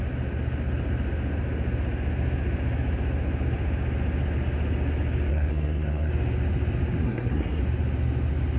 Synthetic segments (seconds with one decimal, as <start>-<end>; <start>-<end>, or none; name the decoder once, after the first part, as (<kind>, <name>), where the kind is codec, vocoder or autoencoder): 5.3-6.1 (codec, SNAC); 7.0-7.6